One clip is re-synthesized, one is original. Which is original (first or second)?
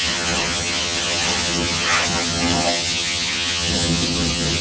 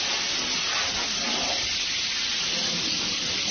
second